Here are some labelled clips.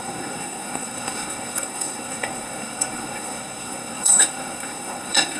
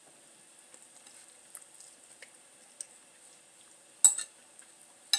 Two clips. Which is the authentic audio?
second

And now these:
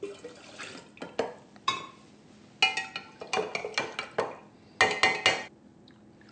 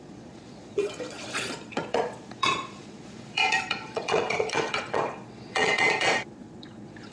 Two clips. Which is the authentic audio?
first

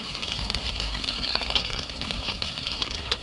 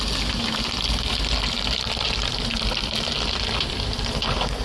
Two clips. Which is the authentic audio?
second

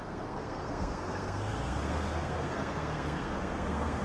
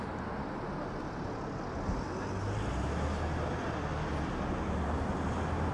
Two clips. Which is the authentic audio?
second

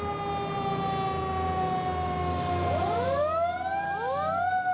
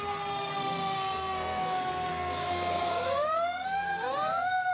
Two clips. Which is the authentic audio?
first